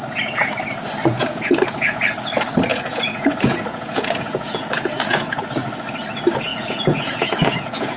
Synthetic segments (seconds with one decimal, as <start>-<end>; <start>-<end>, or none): 1.1-2.0; 2.7-5.5; 6.5-8.0